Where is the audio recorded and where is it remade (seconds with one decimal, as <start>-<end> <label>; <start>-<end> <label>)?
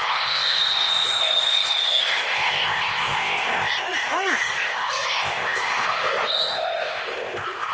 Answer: 0.0-7.7 remade